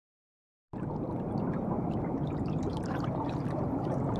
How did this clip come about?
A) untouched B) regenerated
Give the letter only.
B